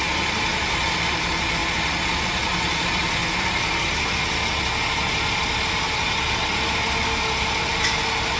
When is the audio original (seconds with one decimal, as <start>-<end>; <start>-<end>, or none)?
0.0-8.4